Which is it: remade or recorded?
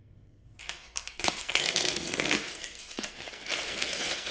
remade